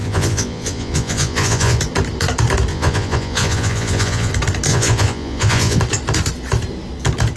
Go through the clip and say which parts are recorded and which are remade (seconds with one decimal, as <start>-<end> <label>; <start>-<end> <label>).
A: 0.0-1.8 remade; 1.8-2.7 recorded; 2.7-4.3 remade; 4.3-4.7 recorded; 4.7-5.8 remade; 5.8-7.4 recorded